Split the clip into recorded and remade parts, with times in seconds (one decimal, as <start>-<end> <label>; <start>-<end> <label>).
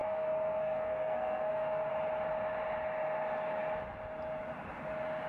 0.0-1.9 remade; 1.9-5.3 recorded